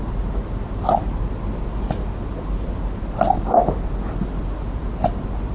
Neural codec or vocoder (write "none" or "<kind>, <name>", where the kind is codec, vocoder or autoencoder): none